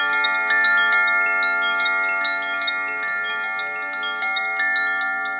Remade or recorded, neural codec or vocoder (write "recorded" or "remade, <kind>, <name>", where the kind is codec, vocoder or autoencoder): recorded